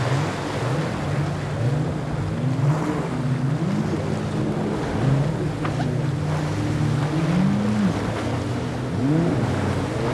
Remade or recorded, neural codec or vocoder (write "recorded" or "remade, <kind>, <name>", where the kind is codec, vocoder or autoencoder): recorded